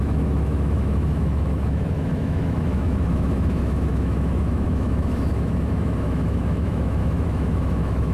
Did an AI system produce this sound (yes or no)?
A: yes